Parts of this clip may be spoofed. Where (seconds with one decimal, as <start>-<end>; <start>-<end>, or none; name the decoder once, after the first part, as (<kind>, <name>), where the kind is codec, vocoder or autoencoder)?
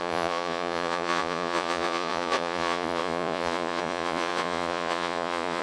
0.0-5.6 (vocoder, Vocos)